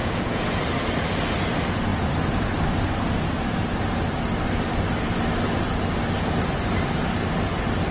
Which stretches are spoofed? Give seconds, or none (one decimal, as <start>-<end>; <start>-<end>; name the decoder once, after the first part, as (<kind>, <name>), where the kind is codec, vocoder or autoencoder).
0.0-0.6 (vocoder, Vocos)